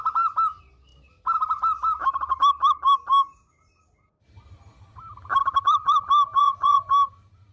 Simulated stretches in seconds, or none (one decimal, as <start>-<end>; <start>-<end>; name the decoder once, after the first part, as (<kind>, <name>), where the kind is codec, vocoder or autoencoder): 6.4-6.9 (vocoder, Vocos)